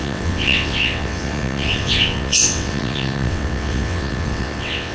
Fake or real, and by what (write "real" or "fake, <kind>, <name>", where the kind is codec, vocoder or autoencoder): fake, vocoder, WaveNeXt